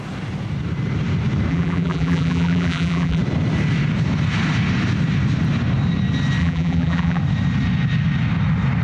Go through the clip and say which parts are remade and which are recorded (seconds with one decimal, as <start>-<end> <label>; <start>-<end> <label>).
0.0-1.5 recorded; 1.5-3.2 remade; 3.2-6.4 recorded; 6.4-7.2 remade; 7.2-8.8 recorded